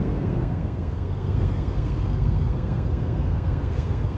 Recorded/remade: remade